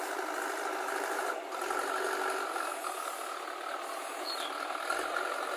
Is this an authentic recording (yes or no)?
yes